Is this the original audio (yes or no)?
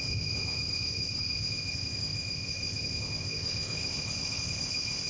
no